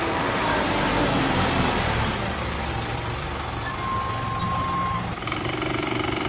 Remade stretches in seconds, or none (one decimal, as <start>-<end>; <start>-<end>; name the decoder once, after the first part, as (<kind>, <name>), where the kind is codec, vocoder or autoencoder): 0.0-0.9 (vocoder, BigVGAN v2); 4.4-6.3